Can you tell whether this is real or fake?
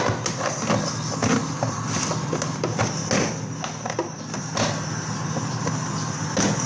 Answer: real